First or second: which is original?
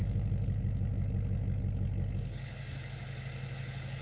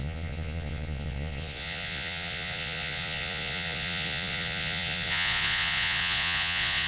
first